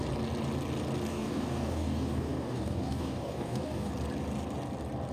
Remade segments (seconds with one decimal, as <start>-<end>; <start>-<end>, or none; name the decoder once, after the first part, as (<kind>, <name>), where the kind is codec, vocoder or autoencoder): 1.1-3.9 (codec, DAC)